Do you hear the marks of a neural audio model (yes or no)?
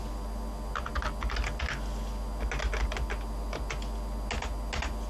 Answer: no